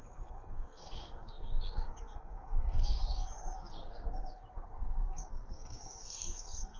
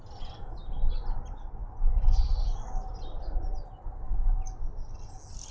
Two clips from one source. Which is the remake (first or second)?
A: first